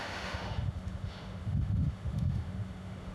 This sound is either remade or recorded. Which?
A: remade